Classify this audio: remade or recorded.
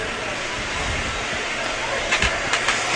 remade